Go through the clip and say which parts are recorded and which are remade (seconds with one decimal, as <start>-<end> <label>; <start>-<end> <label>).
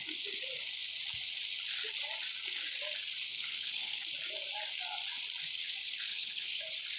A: 0.0-3.3 recorded; 3.3-4.0 remade; 4.0-6.1 recorded; 6.1-6.6 remade; 6.6-7.0 recorded